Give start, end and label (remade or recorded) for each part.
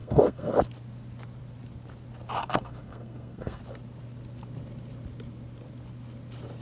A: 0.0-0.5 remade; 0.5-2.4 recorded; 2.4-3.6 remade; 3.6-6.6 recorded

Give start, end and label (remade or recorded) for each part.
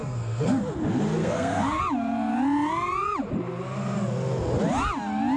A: 0.0-0.6 remade; 0.6-1.2 recorded; 1.2-1.8 remade; 1.8-5.4 recorded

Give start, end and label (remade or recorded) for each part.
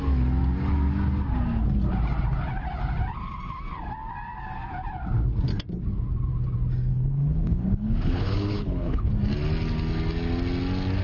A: 0.0-6.9 recorded; 6.9-9.1 remade; 9.1-11.0 recorded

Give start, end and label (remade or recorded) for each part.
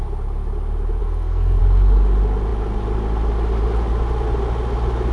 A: 0.0-1.0 recorded; 1.0-1.6 remade; 1.6-5.1 recorded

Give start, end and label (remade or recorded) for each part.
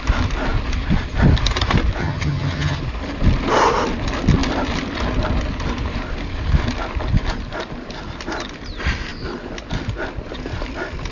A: 0.0-2.0 recorded; 2.0-2.8 remade; 2.8-11.1 recorded